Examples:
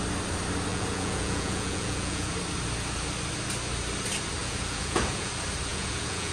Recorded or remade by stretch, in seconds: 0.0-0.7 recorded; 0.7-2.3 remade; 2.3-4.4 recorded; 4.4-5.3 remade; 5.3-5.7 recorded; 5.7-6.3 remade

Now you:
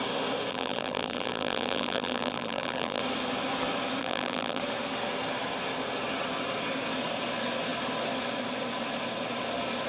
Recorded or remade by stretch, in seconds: 0.0-0.5 recorded; 0.5-3.0 remade; 3.0-4.0 recorded; 4.0-4.6 remade; 4.6-9.9 recorded

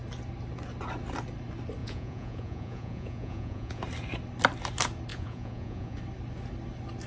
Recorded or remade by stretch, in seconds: 0.0-1.8 recorded; 1.8-3.8 remade; 3.8-5.1 recorded; 5.1-6.0 remade; 6.0-7.1 recorded

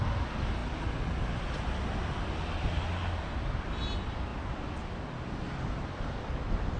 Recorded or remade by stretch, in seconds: 0.0-6.8 recorded

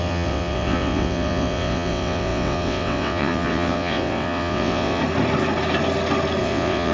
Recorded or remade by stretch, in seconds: 0.0-5.0 remade; 5.0-6.4 recorded; 6.4-6.9 remade